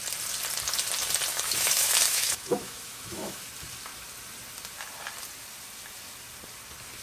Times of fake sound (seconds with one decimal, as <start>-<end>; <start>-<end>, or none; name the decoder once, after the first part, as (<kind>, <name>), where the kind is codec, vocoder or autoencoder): 1.3-3.5 (autoencoder, DAC-VAE)